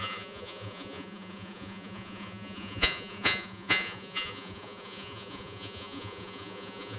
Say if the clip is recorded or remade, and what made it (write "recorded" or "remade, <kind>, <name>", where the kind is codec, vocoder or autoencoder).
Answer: remade, vocoder, Vocos